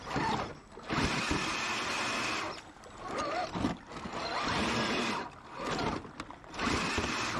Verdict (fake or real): real